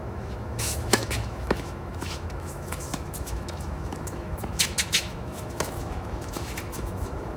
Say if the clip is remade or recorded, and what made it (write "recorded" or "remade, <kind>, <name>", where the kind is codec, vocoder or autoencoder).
remade, autoencoder, DAC-VAE